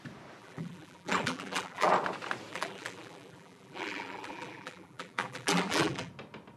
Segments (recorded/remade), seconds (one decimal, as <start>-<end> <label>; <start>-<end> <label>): 0.0-0.4 recorded; 0.4-1.9 remade; 1.9-2.5 recorded; 2.5-6.1 remade; 6.1-6.6 recorded